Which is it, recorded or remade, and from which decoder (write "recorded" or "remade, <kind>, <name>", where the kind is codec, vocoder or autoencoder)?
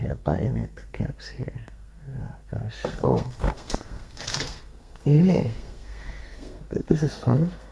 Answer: remade, codec, SNAC